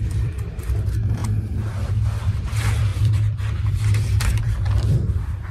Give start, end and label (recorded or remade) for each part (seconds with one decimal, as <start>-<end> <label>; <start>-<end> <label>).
0.0-1.2 remade; 1.2-1.9 recorded; 1.9-5.5 remade